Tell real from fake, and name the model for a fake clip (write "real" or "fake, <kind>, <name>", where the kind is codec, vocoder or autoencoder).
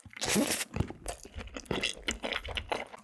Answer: real